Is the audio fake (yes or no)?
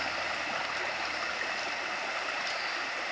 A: no